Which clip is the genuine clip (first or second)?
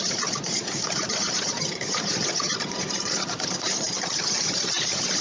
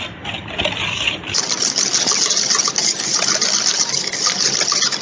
second